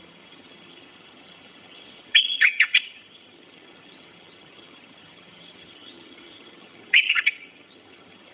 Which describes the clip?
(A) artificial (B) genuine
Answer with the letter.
A